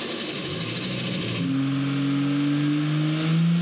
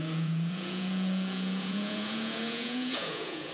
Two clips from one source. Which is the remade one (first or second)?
second